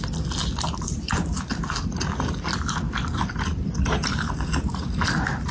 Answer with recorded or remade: recorded